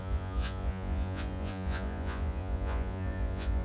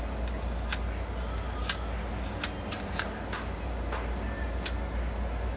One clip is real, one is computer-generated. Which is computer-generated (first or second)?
first